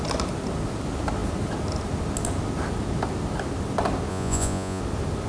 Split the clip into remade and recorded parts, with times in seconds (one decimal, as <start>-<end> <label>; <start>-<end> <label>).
0.0-4.1 recorded; 4.1-4.8 remade; 4.8-5.3 recorded